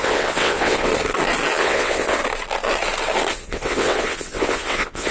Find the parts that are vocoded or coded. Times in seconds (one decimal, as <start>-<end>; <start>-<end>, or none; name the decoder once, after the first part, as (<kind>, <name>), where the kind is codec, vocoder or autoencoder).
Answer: 0.0-0.9 (vocoder, WaveNeXt); 1.6-2.2; 3.3-5.1